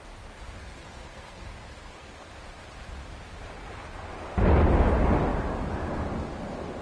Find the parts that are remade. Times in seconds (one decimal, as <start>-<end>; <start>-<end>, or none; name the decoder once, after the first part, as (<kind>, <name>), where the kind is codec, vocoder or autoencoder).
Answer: 0.6-2.3 (codec, SNAC)